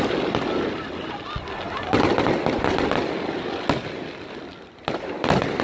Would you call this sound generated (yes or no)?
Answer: no